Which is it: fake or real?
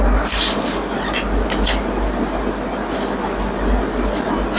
real